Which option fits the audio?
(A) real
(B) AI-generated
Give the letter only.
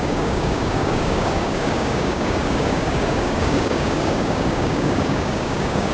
B